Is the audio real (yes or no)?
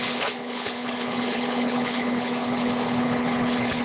no